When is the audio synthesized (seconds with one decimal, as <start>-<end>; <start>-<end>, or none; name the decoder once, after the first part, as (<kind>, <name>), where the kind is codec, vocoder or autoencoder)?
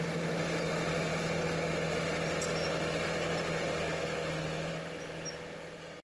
none